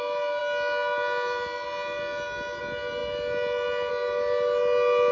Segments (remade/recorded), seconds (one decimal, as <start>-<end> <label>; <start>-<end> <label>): 0.0-5.1 recorded